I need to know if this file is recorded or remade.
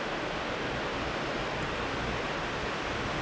recorded